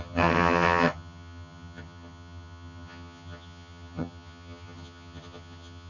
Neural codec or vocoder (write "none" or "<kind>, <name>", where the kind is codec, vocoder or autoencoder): vocoder, HiFi-GAN